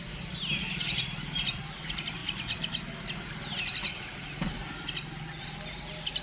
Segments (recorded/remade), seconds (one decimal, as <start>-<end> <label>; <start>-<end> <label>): 0.0-6.2 recorded